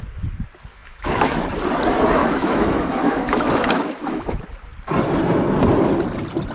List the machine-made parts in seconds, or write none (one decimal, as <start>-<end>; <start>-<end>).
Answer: 0.7-1.5; 2.2-4.4